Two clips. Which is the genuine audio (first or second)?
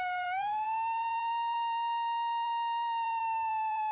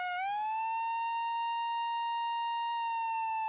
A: second